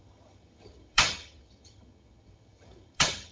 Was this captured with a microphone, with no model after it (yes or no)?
no